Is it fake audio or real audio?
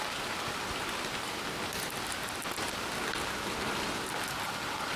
real